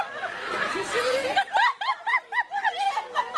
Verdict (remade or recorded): recorded